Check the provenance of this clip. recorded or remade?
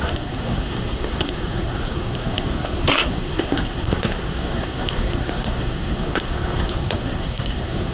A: remade